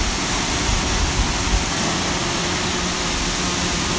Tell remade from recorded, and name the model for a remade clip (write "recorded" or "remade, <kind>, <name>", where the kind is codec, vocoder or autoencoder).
recorded